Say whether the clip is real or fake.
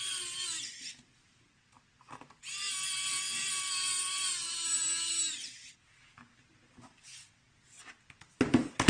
real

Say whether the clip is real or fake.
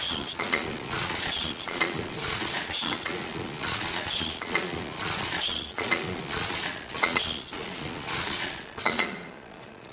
fake